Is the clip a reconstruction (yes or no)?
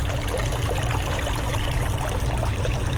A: yes